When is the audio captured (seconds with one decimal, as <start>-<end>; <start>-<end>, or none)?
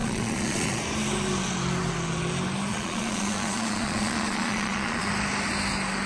0.8-2.7; 5.1-6.1